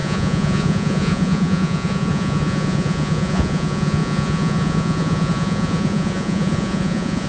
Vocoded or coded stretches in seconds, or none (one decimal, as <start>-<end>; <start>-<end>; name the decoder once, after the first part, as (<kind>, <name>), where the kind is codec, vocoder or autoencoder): 0.0-7.3 (vocoder, Vocos)